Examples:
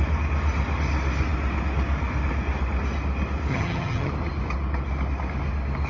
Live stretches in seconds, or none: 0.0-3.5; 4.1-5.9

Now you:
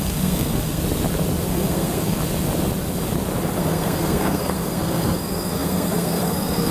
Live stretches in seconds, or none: 0.8-1.5; 2.2-3.6

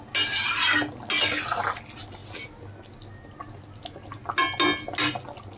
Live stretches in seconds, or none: 0.0-5.6

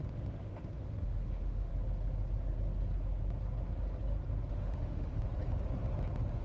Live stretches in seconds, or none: 1.7-4.5; 5.1-6.4

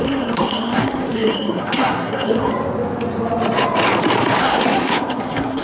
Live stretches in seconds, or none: 2.5-4.4

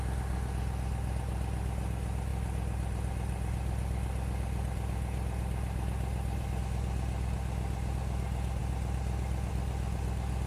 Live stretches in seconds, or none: 0.0-10.5

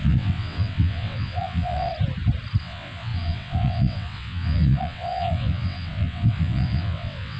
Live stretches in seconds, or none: 1.9-2.6